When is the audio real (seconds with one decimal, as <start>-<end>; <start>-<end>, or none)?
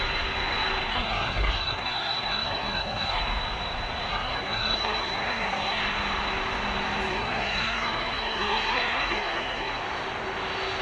0.0-0.9; 3.2-4.1; 5.8-7.1; 9.8-10.8